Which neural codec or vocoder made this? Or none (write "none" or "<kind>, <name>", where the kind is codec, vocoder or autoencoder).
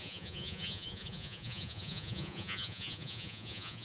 vocoder, Vocos